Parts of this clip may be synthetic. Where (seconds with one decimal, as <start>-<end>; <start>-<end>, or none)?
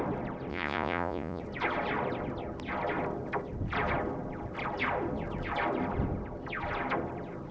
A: 0.5-1.4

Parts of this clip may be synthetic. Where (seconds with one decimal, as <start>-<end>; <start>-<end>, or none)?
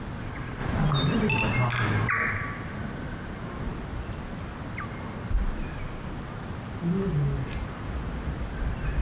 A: none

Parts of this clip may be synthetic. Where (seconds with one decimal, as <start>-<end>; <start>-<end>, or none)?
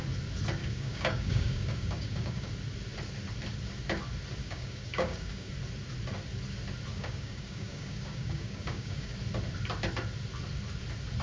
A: 0.6-2.5; 4.4-5.5; 6.9-9.1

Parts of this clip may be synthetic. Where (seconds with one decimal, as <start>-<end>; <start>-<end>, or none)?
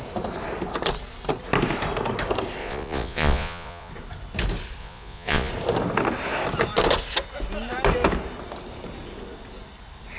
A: 2.6-3.9; 4.8-5.5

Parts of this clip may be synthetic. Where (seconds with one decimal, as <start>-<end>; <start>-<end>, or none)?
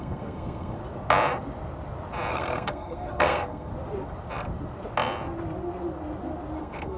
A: 0.0-0.8; 2.3-3.7; 6.6-7.0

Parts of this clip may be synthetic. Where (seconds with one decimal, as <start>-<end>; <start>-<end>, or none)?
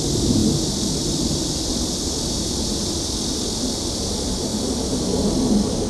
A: none